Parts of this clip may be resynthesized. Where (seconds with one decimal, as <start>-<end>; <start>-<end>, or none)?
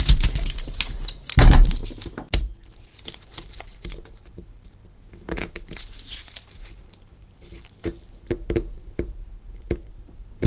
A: 0.0-1.8; 2.4-10.5